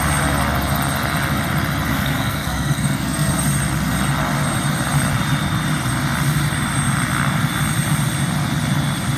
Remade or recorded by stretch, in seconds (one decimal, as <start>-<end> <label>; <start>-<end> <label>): 0.0-1.9 recorded; 1.9-3.4 remade; 3.4-9.2 recorded